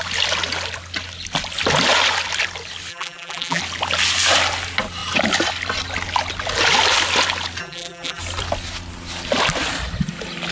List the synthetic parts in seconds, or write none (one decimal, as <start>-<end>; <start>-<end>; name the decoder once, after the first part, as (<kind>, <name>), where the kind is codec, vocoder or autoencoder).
2.9-3.6 (vocoder, BigVGAN v2); 7.6-8.2